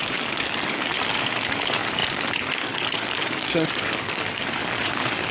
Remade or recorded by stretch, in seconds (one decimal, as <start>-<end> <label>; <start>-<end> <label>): 0.0-5.3 remade